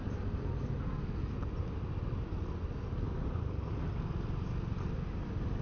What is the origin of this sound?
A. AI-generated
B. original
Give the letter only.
B